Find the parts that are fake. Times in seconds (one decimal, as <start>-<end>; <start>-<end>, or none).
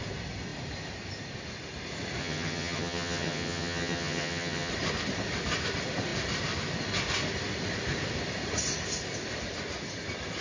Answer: 2.2-4.7